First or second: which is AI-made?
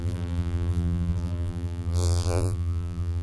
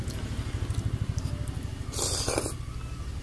first